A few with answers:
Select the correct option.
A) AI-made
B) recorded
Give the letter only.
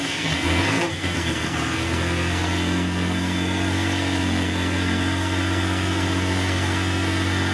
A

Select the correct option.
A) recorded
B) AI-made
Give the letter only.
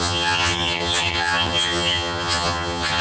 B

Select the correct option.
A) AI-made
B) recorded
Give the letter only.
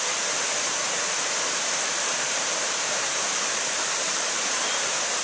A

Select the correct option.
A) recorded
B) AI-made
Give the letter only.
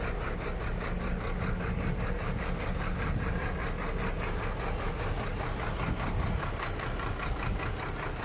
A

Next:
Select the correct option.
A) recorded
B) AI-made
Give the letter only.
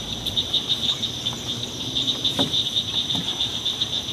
B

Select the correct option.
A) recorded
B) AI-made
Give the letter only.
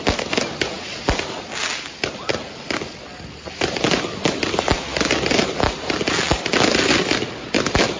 A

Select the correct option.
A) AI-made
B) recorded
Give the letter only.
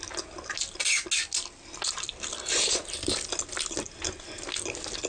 B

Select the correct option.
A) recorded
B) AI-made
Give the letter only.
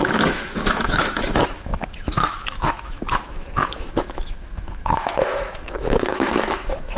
B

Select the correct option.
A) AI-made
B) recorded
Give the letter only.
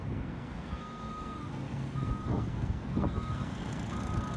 A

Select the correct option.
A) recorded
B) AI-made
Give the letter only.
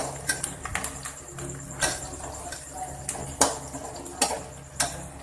A